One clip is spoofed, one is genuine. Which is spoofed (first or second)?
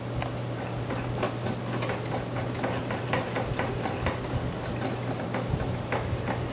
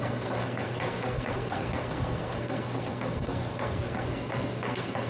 second